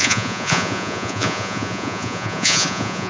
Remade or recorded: remade